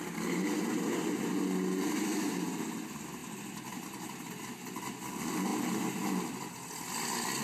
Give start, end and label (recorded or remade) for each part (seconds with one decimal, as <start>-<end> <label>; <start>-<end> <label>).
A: 0.0-3.2 recorded; 3.2-4.4 remade; 4.4-7.4 recorded